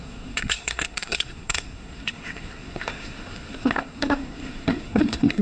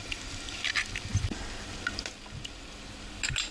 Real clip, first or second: second